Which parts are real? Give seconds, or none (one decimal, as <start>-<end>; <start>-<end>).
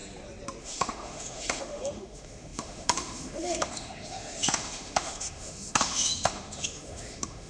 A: 0.0-0.6